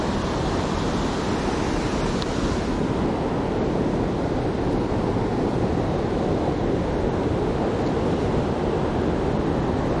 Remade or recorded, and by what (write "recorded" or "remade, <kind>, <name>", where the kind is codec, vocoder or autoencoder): recorded